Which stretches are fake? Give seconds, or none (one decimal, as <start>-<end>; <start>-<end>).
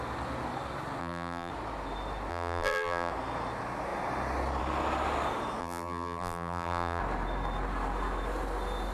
1.0-1.5; 2.3-3.1; 5.6-7.0